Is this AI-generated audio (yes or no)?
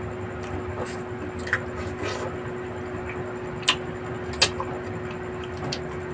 no